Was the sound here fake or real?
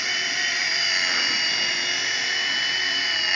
real